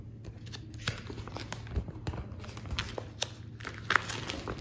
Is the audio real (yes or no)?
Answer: yes